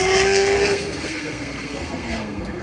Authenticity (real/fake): fake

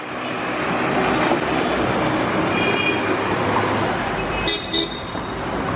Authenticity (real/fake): real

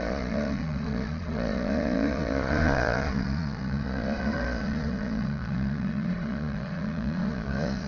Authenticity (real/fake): fake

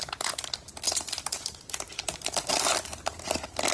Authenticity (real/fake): real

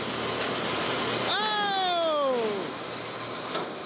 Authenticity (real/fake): real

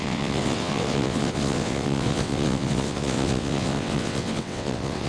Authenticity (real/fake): fake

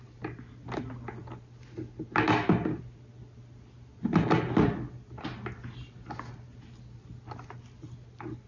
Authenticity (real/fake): real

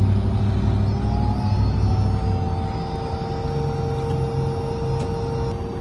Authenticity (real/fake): real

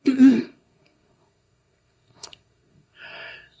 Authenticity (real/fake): fake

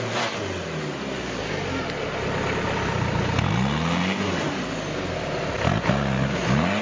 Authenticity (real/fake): real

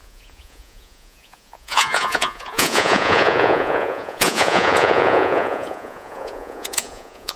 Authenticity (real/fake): fake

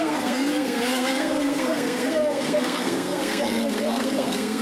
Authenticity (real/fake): fake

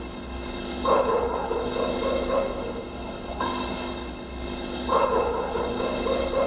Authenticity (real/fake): fake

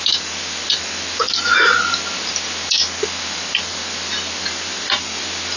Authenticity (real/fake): real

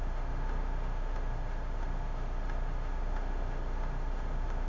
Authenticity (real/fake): fake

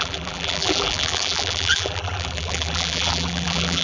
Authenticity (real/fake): fake